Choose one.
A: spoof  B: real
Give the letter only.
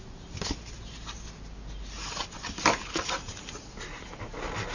B